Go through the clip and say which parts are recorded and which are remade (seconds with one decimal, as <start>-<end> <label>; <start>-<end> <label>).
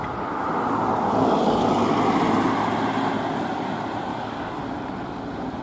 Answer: 0.0-0.9 recorded; 0.9-1.7 remade; 1.7-4.1 recorded; 4.1-4.6 remade; 4.6-5.6 recorded